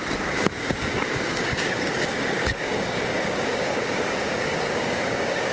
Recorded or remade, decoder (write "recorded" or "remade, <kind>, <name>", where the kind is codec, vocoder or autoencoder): remade, codec, DAC